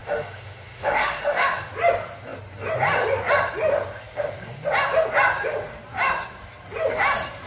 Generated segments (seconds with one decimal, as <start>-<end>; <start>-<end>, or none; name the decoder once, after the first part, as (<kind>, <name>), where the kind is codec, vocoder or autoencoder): 0.0-1.7 (autoencoder, DAC-VAE)